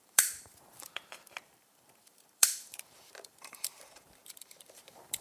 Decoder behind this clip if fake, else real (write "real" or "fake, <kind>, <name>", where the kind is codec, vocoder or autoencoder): fake, vocoder, BigVGAN v2